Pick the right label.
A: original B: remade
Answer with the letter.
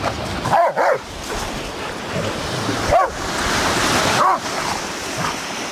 B